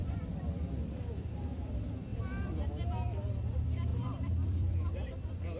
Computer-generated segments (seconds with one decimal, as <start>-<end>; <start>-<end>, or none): 0.0-1.7; 2.1-2.7; 3.9-5.6